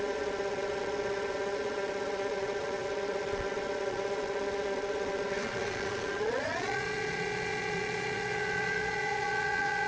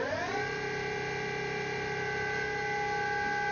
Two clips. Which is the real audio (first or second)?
second